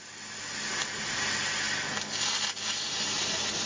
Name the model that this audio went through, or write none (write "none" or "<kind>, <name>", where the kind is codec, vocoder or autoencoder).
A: none